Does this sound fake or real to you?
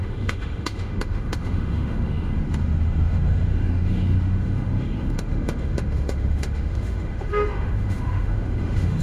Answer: fake